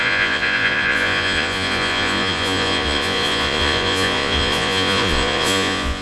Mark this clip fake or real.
fake